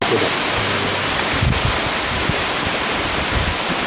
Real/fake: real